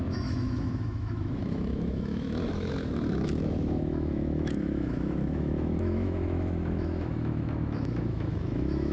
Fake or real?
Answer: fake